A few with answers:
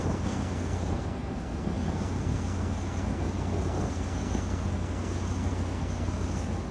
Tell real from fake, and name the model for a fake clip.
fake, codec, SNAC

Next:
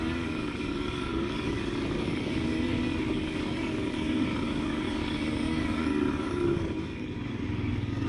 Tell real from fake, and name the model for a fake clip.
fake, codec, DAC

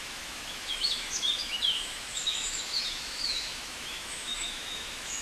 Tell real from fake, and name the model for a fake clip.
fake, autoencoder, DAC-VAE